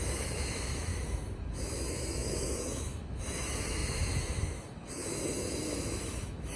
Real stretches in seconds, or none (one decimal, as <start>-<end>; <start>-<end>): none